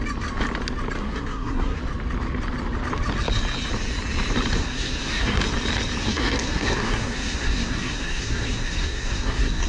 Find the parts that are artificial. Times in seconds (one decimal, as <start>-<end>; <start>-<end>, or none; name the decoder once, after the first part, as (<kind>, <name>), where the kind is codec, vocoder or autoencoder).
1.0-1.8 (codec, SNAC); 4.6-5.4; 6.0-9.7